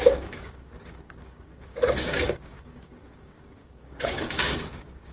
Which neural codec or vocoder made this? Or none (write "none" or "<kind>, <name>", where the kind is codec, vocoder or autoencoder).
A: codec, DAC